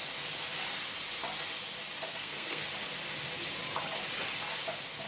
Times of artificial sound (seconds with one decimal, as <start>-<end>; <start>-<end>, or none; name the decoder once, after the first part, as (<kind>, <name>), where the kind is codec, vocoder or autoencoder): 2.1-2.7 (codec, SNAC)